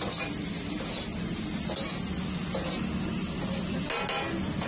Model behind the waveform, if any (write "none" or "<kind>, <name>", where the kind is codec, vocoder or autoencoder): none